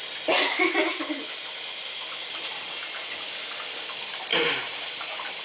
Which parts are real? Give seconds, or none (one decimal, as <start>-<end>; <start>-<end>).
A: 0.0-2.2; 2.7-4.3